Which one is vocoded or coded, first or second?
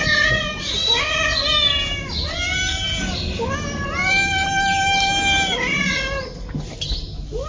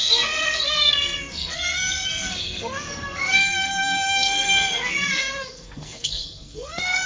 second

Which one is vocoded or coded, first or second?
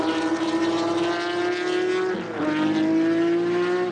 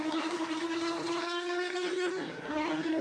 second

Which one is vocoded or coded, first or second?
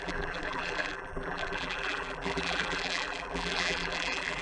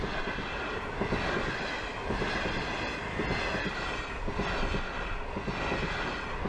first